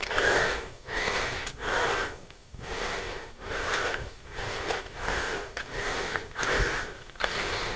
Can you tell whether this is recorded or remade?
remade